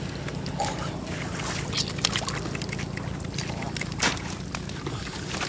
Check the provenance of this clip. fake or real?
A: real